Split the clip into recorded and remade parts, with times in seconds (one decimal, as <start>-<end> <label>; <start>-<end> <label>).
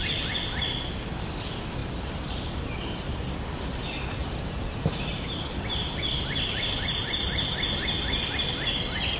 0.0-1.8 recorded; 1.8-2.6 remade; 2.6-4.2 recorded; 4.2-5.9 remade; 5.9-9.2 recorded